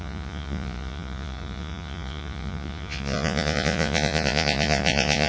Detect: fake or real fake